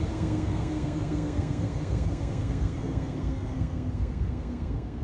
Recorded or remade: remade